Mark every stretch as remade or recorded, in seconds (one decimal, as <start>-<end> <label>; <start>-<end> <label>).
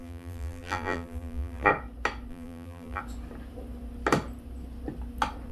0.0-1.7 remade; 1.7-2.3 recorded; 2.3-3.0 remade; 3.0-5.5 recorded